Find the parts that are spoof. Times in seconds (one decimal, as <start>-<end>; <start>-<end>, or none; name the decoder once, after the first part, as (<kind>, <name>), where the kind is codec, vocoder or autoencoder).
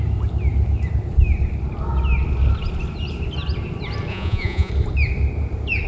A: 4.1-4.7 (vocoder, Vocos)